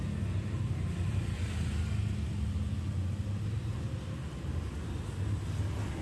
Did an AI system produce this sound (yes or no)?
no